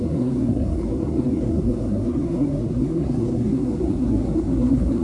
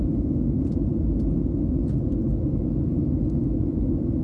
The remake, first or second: first